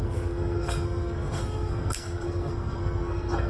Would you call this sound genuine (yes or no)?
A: no